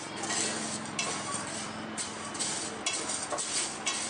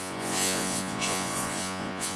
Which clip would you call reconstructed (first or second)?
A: second